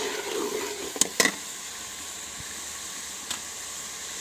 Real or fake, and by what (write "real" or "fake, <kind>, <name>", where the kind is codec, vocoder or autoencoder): real